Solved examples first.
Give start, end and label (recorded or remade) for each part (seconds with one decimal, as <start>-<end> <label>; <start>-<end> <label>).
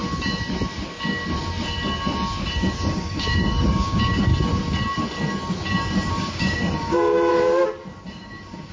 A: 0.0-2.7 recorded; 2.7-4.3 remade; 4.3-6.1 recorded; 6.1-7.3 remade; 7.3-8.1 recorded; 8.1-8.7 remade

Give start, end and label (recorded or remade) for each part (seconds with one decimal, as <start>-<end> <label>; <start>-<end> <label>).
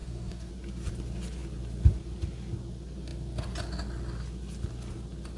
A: 0.0-0.5 remade; 0.5-5.4 recorded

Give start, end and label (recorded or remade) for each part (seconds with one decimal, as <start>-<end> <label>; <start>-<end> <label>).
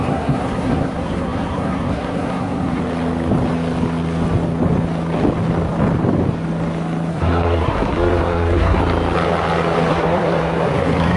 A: 0.0-2.8 remade; 2.8-7.1 recorded; 7.1-8.8 remade; 8.8-9.9 recorded; 9.9-11.2 remade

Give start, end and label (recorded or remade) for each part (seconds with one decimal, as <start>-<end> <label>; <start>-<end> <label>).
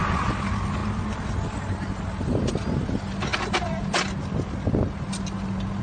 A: 0.0-5.8 recorded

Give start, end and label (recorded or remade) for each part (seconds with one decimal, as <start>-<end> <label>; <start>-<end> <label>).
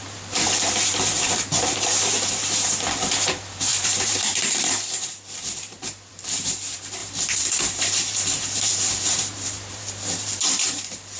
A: 0.0-11.2 remade